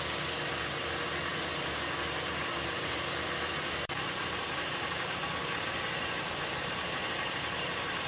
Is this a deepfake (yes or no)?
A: yes